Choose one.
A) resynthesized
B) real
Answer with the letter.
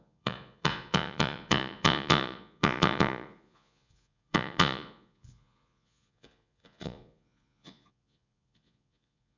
A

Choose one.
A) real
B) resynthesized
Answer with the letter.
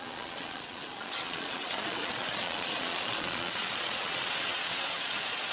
B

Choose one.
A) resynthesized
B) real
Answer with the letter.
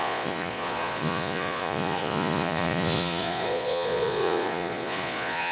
A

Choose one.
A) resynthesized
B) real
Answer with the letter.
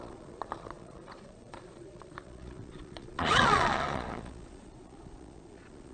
A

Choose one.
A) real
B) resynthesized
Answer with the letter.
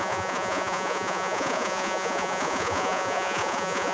B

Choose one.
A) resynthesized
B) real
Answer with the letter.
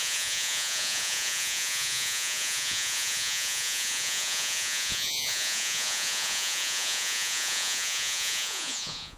A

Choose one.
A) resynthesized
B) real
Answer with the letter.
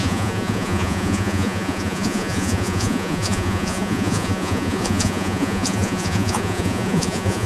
A